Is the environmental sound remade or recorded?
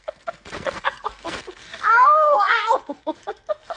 remade